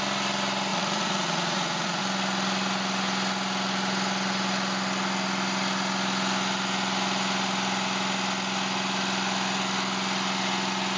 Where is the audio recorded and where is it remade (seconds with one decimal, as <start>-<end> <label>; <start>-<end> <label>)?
0.0-0.7 recorded; 0.7-2.0 remade; 2.0-11.0 recorded